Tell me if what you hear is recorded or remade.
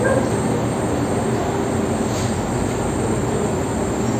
recorded